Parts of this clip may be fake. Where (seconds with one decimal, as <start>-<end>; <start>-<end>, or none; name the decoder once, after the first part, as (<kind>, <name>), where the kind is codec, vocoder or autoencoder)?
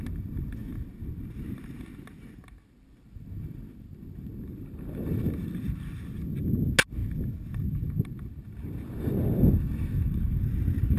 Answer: none